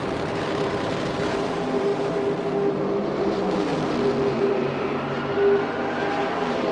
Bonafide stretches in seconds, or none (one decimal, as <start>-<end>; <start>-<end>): 1.9-2.7; 3.7-4.3; 5.3-6.2